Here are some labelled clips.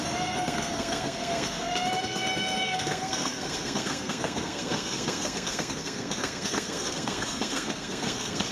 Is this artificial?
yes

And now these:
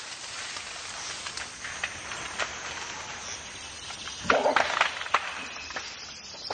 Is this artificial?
no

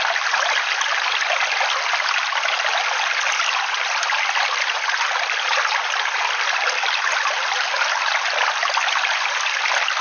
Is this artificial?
no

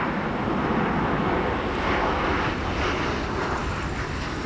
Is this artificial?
no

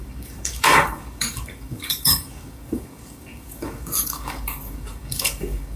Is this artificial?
yes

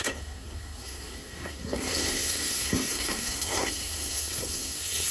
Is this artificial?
yes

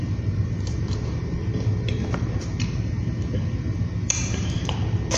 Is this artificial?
yes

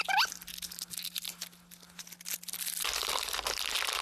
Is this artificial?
no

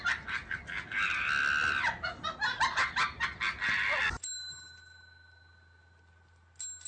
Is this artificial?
no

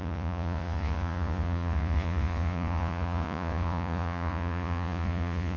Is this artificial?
yes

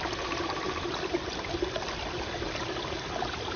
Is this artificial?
no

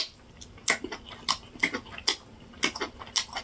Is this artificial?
no